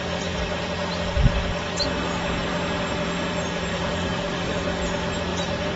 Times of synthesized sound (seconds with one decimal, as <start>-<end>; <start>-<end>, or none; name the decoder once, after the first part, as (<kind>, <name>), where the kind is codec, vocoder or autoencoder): 3.7-4.8 (codec, DAC)